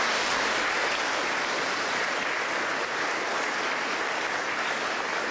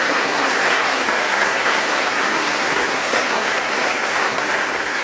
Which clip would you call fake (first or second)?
second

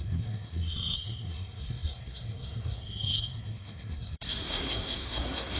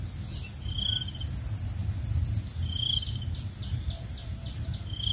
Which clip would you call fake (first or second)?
first